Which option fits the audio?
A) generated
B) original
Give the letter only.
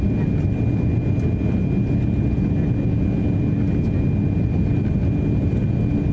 B